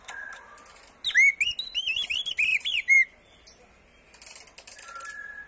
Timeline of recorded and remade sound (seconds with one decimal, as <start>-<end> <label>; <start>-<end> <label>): 0.0-2.5 recorded; 2.5-3.6 remade; 3.6-5.5 recorded